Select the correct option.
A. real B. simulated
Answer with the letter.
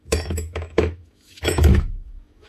B